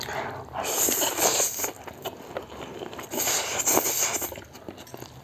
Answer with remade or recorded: recorded